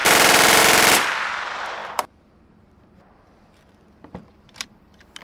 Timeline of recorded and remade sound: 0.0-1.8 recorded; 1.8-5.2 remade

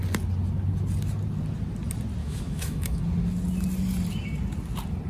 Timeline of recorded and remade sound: 0.0-2.2 recorded; 2.2-3.0 remade; 3.0-5.1 recorded